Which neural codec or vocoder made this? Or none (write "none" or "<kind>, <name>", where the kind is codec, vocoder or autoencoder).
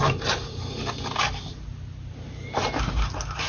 none